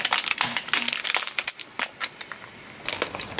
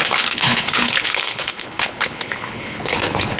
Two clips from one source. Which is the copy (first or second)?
second